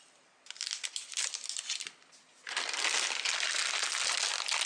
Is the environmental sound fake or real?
real